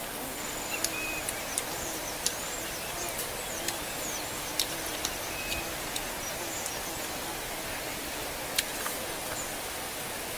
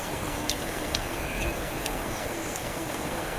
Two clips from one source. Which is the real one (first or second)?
first